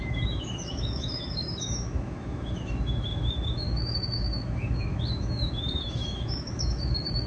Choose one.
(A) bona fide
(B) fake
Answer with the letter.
B